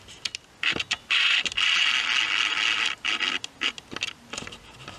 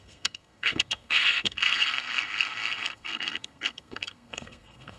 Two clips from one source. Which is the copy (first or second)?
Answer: second